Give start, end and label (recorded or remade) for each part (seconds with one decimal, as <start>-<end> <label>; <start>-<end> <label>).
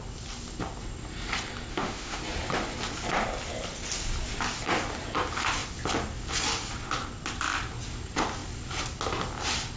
0.0-1.7 recorded; 1.7-2.2 remade; 2.2-9.8 recorded